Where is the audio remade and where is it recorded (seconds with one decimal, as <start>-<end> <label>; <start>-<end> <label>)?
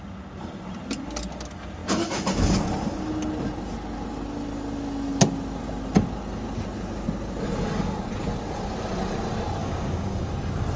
0.0-9.6 recorded; 9.6-10.3 remade; 10.3-10.8 recorded